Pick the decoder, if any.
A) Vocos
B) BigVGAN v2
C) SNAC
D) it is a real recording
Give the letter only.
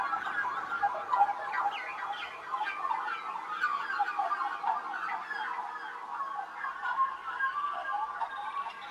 D